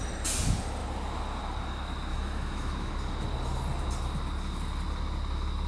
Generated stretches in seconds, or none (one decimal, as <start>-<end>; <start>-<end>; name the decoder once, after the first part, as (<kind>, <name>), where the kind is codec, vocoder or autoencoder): 2.1-2.9 (autoencoder, DAC-VAE)